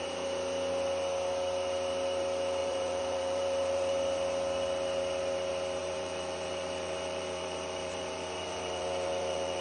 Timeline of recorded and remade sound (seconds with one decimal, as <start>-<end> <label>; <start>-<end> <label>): 0.0-2.6 recorded; 2.6-3.9 remade; 3.9-5.8 recorded; 5.8-9.6 remade